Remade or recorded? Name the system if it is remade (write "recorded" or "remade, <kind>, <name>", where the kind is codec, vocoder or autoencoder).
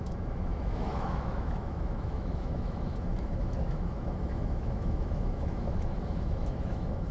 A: remade, autoencoder, DAC-VAE